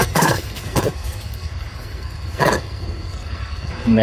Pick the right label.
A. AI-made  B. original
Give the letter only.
A